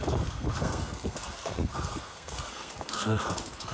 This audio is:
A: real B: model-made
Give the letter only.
B